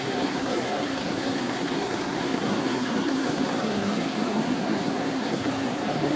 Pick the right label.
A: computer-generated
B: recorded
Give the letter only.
A